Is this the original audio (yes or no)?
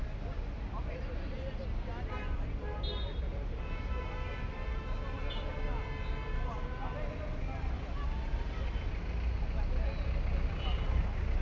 yes